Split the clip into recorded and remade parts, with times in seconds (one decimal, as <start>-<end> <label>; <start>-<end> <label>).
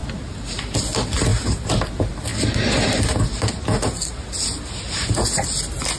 0.0-6.0 recorded